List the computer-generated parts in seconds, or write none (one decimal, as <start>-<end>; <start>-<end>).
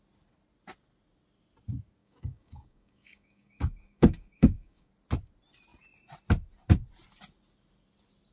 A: 2.0-4.9